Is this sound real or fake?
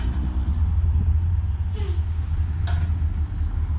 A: real